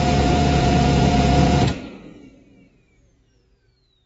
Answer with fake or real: fake